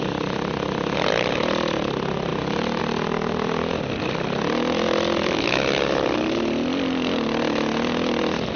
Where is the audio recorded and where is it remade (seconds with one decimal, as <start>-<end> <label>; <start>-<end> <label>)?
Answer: 0.0-8.6 recorded